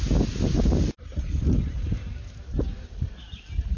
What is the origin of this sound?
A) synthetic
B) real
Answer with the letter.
B